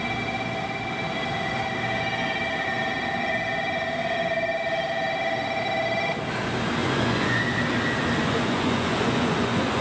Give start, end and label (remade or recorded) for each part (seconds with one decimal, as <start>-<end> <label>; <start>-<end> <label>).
0.0-6.8 recorded; 6.8-7.4 remade; 7.4-8.2 recorded; 8.2-9.8 remade